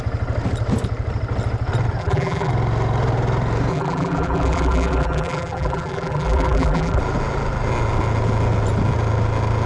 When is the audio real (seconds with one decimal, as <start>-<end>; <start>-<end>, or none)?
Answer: 0.0-2.0; 2.5-3.7; 7.0-9.7